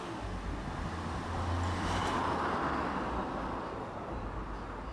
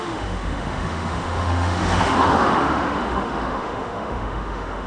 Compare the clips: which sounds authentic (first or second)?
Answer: first